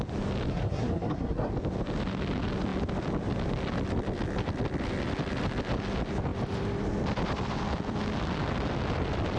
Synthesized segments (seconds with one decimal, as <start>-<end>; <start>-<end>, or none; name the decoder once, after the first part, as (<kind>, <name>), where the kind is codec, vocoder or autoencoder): 0.5-1.5 (codec, SNAC)